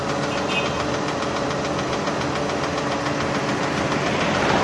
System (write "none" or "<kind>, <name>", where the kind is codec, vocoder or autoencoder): none